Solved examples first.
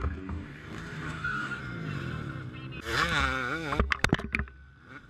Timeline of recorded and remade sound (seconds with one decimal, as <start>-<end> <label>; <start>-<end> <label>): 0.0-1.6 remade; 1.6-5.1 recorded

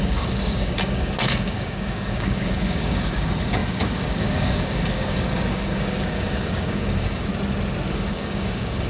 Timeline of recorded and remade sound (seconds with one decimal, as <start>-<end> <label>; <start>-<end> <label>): 0.0-7.3 remade; 7.3-7.9 recorded; 7.9-8.9 remade

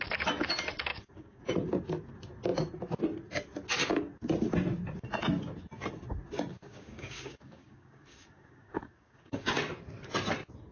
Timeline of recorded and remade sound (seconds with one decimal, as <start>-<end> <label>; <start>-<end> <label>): 0.0-0.9 recorded; 0.9-1.4 remade; 1.4-6.5 recorded; 6.5-9.5 remade; 9.5-10.7 recorded

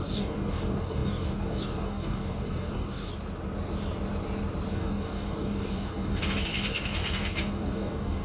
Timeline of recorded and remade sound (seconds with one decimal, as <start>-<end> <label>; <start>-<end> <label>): 0.0-3.1 remade; 3.1-4.7 recorded; 4.7-8.2 remade

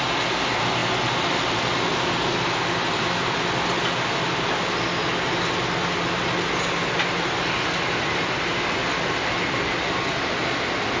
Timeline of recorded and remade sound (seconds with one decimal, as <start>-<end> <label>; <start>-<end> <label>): 0.0-11.0 recorded

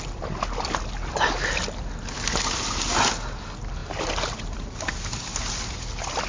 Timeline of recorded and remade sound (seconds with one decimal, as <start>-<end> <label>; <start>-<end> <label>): 0.0-6.3 recorded